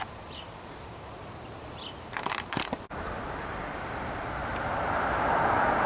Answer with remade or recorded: remade